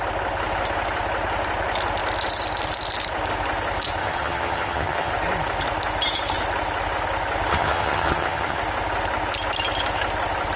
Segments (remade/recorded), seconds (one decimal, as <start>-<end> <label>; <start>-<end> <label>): 0.0-4.0 recorded; 4.0-5.1 remade; 5.1-7.5 recorded; 7.5-8.6 remade; 8.6-10.6 recorded